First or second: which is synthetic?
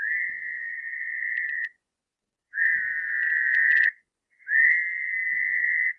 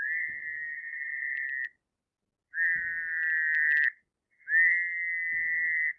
first